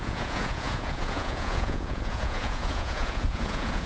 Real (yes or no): no